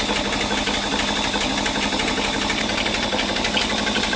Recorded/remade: recorded